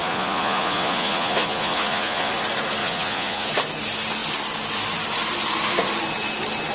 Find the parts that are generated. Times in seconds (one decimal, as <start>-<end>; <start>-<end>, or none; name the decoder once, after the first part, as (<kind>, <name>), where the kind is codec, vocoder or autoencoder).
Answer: 0.0-2.3 (vocoder, Vocos); 2.8-3.5